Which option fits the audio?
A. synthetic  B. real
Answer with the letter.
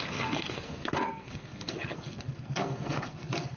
A